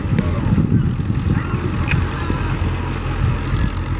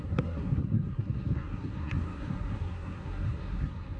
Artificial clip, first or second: second